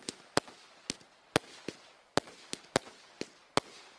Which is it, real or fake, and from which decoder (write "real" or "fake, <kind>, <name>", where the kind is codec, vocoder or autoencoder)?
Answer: real